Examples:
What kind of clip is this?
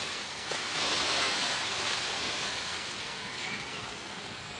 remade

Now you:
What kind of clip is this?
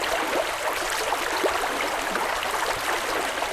recorded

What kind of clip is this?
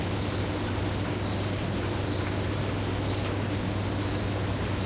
recorded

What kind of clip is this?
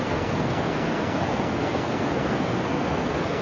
remade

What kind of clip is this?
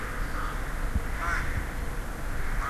recorded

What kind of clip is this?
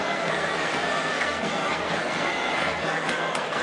remade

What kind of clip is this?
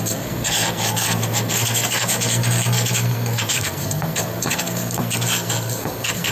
remade